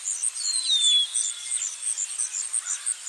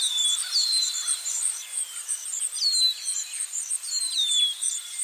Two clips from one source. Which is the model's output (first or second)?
second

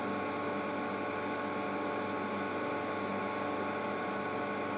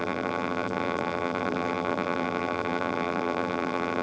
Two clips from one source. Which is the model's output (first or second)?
second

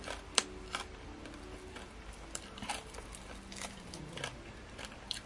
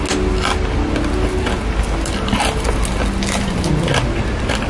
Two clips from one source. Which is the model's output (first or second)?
first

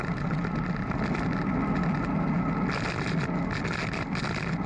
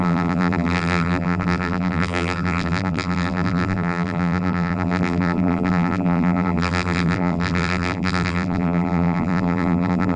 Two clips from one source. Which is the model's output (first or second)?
second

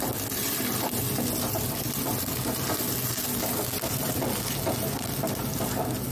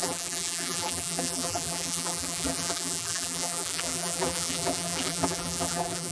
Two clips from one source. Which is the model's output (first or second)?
second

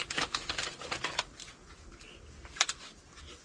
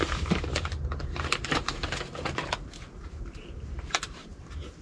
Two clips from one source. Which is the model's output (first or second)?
second